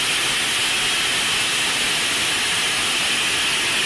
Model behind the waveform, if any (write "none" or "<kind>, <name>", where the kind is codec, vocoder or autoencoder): none